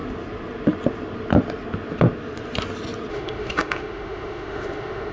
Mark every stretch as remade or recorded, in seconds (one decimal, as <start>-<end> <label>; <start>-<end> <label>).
0.0-3.1 recorded; 3.1-5.1 remade